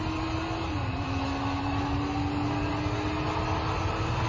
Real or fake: real